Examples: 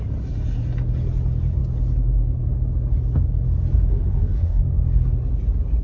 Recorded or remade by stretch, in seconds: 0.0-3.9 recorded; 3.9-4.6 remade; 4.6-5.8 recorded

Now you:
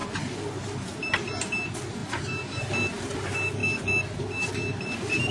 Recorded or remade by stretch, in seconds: 0.0-5.3 recorded

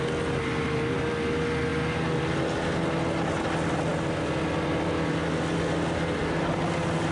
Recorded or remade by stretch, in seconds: 0.0-7.1 recorded

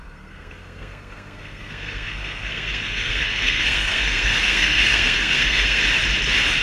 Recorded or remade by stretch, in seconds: 0.0-5.8 remade; 5.8-6.6 recorded

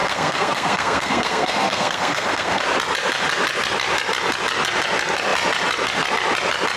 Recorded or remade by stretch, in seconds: 0.0-2.6 remade; 2.6-6.8 recorded